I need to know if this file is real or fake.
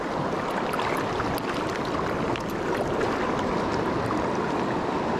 real